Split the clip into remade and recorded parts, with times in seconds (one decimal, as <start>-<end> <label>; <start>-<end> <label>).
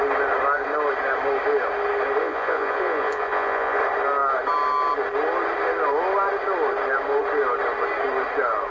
0.0-2.2 recorded; 2.2-3.8 remade; 3.8-8.7 recorded